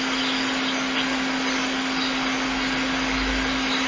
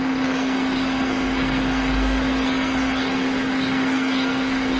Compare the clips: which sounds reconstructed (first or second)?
second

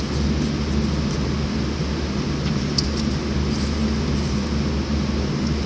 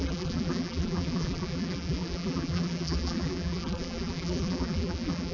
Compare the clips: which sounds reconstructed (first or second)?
second